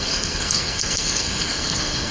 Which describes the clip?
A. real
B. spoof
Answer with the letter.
B